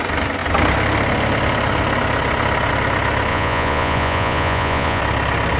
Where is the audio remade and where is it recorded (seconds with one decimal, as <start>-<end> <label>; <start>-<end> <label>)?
0.0-3.3 recorded; 3.3-5.0 remade; 5.0-5.6 recorded